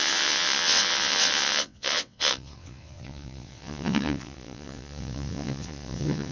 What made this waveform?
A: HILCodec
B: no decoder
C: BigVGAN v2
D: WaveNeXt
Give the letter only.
D